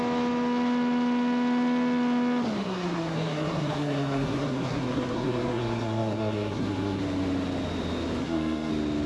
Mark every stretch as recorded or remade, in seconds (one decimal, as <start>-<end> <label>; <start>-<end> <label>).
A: 0.0-2.6 recorded; 2.6-7.0 remade; 7.0-8.2 recorded; 8.2-8.7 remade; 8.7-9.1 recorded